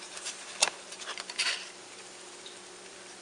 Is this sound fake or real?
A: real